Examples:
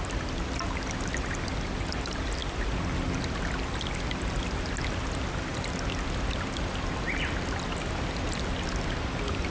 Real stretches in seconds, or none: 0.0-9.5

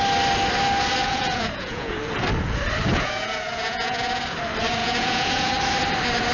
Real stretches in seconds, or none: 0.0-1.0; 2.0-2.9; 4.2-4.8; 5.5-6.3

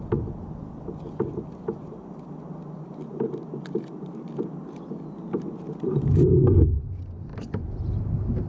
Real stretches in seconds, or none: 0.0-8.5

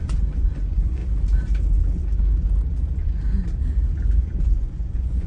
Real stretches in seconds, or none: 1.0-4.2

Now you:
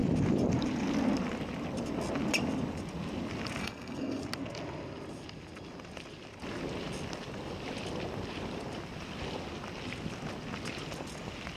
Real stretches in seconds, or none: 0.0-3.6; 4.2-11.6

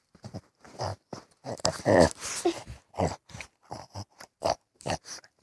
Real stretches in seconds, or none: 0.9-4.1